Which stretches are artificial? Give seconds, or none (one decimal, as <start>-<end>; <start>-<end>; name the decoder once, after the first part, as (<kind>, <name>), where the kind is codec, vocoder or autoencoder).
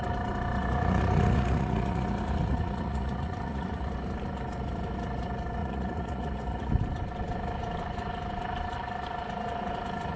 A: 0.6-3.9 (vocoder, Vocos); 5.6-6.7